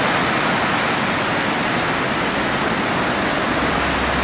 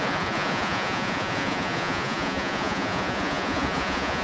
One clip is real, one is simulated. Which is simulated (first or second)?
second